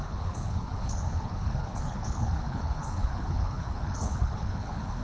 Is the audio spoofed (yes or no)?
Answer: yes